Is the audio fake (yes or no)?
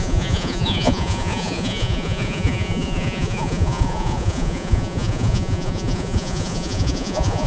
yes